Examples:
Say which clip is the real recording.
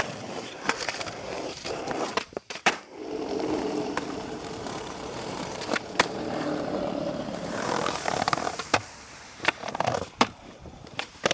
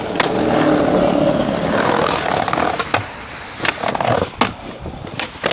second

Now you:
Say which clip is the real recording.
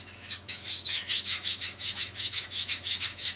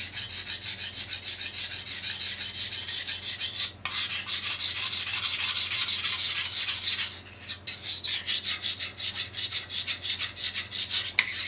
second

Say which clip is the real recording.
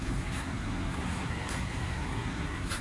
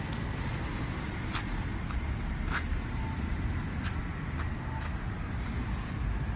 second